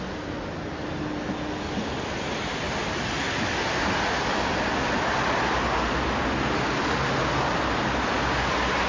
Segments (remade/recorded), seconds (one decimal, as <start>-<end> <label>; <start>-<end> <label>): 0.0-8.9 recorded